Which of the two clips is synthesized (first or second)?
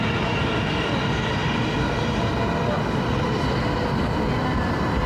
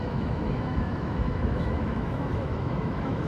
second